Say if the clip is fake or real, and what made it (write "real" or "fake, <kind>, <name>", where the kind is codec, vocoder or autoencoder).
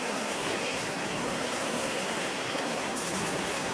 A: fake, codec, SNAC